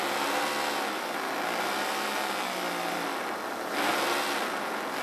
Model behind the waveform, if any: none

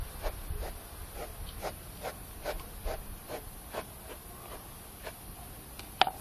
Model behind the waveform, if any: none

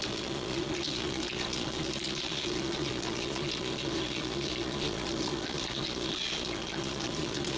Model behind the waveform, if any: vocoder, Vocos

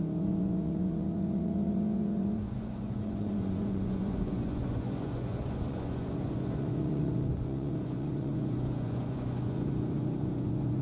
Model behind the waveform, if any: vocoder, Vocos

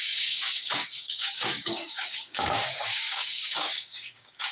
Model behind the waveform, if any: codec, DAC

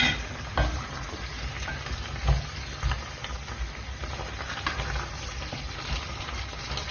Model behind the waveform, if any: none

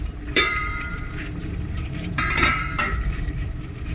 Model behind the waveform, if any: vocoder, BigVGAN v2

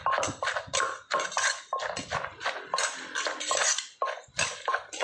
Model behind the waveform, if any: none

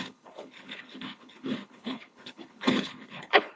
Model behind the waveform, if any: codec, HILCodec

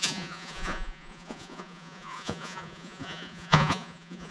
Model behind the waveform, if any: vocoder, Vocos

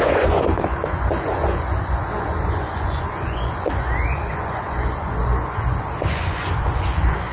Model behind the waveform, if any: vocoder, Vocos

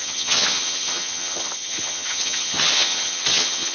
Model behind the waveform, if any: vocoder, HiFi-GAN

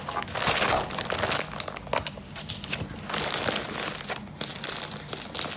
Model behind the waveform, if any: none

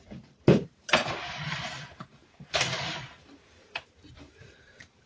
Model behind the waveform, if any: vocoder, BigVGAN v2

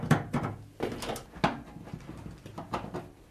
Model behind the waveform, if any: none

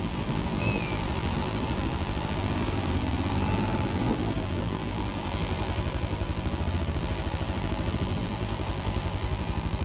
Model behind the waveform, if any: vocoder, BigVGAN v2